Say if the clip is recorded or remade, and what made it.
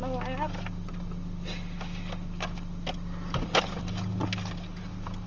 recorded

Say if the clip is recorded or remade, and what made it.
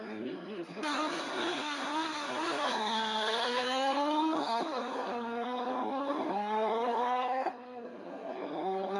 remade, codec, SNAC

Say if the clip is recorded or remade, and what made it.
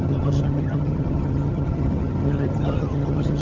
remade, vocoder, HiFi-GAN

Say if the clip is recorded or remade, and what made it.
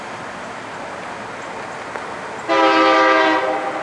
recorded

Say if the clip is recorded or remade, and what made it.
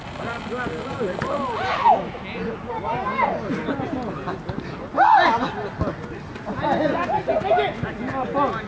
recorded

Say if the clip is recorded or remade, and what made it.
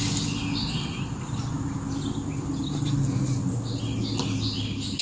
recorded